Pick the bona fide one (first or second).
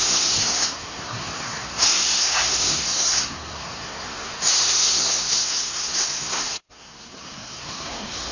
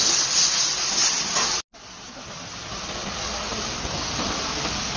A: second